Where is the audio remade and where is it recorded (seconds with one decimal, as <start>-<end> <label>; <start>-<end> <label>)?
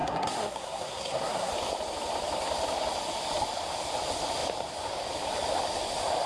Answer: 0.0-1.5 remade; 1.5-6.3 recorded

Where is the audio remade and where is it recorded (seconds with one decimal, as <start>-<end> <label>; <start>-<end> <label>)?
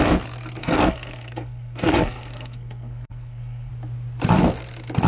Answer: 0.0-0.6 recorded; 0.6-3.7 remade; 3.7-5.1 recorded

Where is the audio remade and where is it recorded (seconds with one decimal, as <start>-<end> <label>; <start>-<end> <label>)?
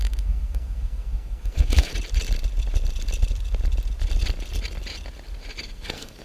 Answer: 0.0-1.9 remade; 1.9-5.6 recorded; 5.6-6.2 remade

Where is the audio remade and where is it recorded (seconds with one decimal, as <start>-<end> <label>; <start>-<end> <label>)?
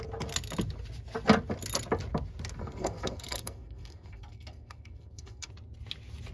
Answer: 0.0-2.6 recorded; 2.6-5.5 remade; 5.5-6.3 recorded